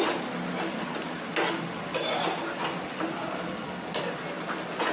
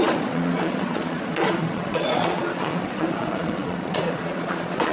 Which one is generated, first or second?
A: second